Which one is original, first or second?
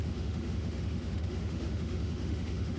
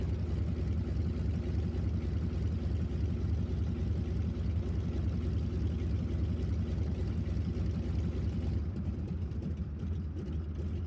second